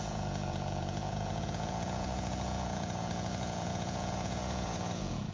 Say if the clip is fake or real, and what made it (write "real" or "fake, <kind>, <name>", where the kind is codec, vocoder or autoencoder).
fake, vocoder, Vocos